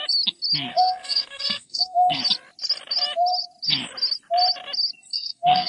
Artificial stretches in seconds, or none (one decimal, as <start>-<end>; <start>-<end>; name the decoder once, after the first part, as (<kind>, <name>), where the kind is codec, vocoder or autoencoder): 0.7-2.2 (codec, SNAC); 5.1-5.7